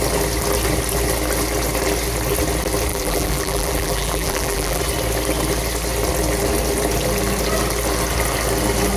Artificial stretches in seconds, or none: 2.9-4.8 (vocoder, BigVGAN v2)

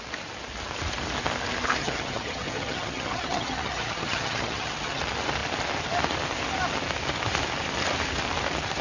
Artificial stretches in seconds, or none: 1.8-5.0 (vocoder, HiFi-GAN)

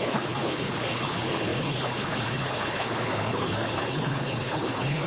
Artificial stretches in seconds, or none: 0.0-5.1 (codec, HILCodec)

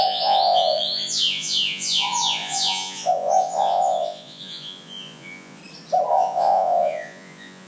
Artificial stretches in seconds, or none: 0.0-5.6 (vocoder, Vocos); 6.1-7.7

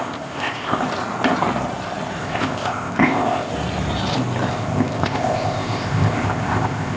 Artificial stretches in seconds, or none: 0.0-0.8 (codec, ZipCodec); 2.2-3.5; 4.5-7.0

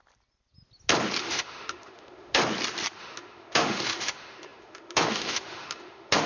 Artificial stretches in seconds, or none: 1.2-2.4 (autoencoder, DAC-VAE); 3.0-6.3

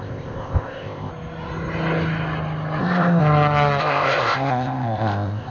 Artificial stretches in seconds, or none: 0.0-1.1 (codec, ZipCodec); 2.8-3.2; 3.8-5.5

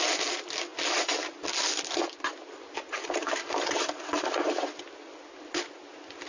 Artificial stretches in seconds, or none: none